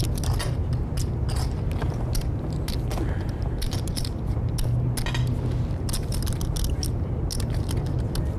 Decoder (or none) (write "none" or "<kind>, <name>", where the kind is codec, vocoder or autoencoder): none